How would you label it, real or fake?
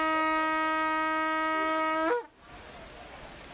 real